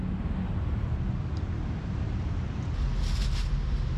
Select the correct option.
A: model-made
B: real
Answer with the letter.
B